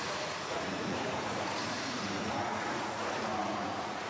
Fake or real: fake